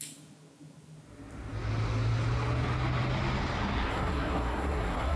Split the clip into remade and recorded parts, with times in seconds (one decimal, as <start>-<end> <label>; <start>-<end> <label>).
0.0-3.9 recorded; 3.9-5.2 remade